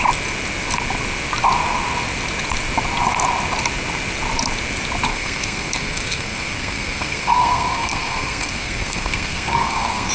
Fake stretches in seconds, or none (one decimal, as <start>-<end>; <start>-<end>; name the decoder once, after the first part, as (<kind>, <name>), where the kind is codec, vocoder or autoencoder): 5.1-10.1 (codec, SNAC)